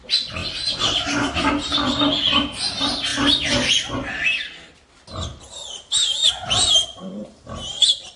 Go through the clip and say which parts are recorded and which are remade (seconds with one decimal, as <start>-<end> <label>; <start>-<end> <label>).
0.0-8.2 recorded

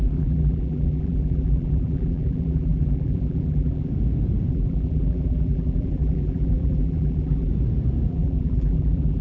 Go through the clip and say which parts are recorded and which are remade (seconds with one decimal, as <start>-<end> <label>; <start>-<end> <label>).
0.0-3.9 remade; 3.9-4.5 recorded; 4.5-7.5 remade; 7.5-8.1 recorded; 8.1-9.2 remade

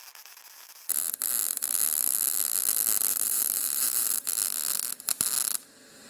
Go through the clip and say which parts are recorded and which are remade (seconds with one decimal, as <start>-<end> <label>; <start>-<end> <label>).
0.0-3.1 recorded; 3.1-4.2 remade; 4.2-6.1 recorded